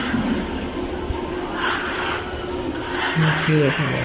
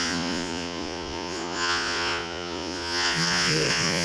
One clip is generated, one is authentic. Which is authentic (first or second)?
first